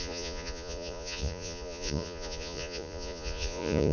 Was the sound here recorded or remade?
remade